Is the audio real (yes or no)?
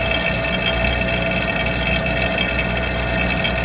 yes